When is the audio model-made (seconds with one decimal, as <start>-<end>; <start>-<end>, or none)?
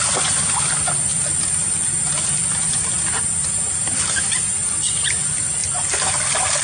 none